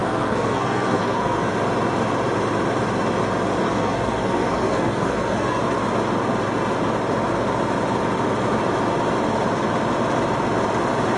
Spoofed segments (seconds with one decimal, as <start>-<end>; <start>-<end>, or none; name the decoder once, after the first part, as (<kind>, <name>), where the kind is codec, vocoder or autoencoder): 0.0-1.5 (codec, SNAC); 3.6-5.6